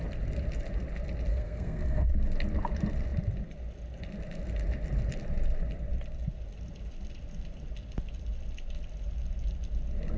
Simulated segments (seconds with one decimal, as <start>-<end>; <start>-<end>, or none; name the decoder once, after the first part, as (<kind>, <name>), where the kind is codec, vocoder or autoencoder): 1.3-2.1 (codec, SNAC)